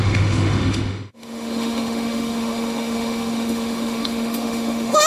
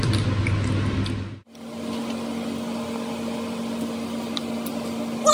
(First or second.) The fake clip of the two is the first